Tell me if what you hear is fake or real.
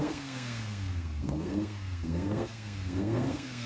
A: fake